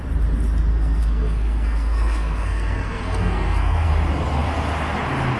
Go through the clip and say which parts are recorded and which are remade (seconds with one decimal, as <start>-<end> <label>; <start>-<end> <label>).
0.0-0.7 recorded; 0.7-3.9 remade; 3.9-5.4 recorded